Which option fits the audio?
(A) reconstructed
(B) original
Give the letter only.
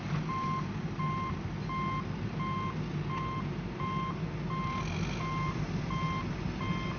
B